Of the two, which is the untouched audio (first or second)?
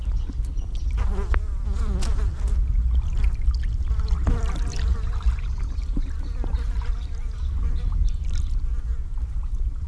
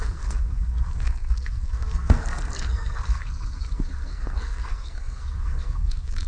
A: first